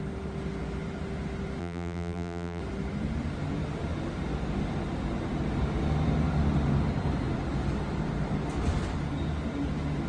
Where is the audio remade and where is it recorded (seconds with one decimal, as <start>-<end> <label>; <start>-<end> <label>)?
0.0-1.6 recorded; 1.6-2.6 remade; 2.6-10.1 recorded